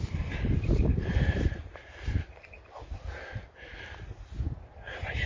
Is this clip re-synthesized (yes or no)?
no